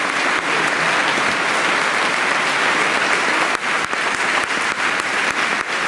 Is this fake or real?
real